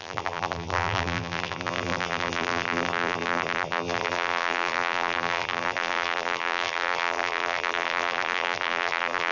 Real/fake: fake